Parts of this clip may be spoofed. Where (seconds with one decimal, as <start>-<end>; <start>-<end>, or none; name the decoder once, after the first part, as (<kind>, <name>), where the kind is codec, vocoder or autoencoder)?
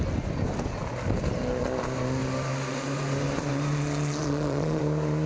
4.2-4.8 (vocoder, Vocos)